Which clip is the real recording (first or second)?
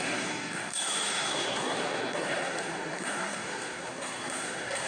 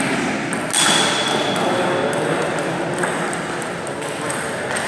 second